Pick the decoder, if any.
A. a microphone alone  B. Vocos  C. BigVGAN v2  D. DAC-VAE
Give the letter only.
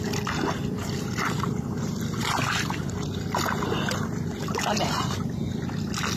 C